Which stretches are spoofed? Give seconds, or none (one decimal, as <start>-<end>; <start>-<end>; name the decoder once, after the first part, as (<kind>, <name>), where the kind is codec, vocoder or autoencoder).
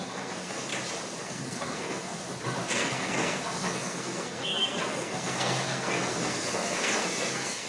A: 0.0-0.7 (codec, SNAC); 1.2-2.2; 2.7-7.7